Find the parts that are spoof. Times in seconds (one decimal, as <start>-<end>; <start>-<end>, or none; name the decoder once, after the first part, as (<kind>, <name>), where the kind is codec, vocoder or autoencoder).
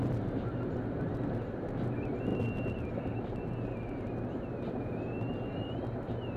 none